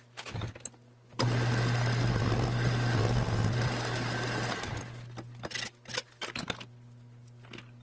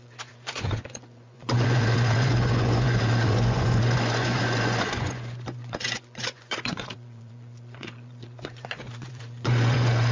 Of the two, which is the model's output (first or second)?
second